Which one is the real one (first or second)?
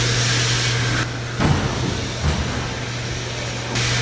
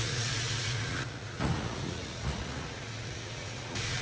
first